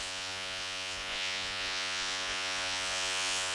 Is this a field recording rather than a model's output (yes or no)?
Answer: no